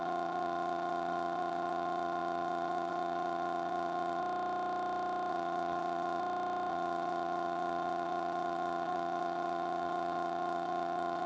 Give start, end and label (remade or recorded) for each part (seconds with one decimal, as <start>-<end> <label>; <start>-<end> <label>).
0.0-4.2 remade; 4.2-5.3 recorded; 5.3-6.2 remade; 6.2-6.7 recorded; 6.7-11.3 remade